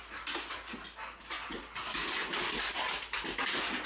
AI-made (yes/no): no